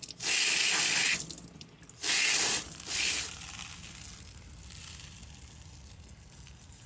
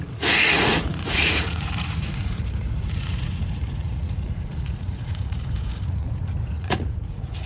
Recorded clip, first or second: first